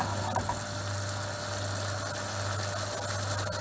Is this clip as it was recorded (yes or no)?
yes